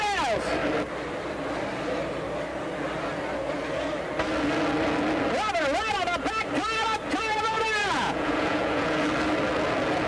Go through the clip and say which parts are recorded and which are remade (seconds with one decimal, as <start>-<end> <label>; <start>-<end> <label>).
0.0-7.8 recorded; 7.8-9.0 remade; 9.0-10.1 recorded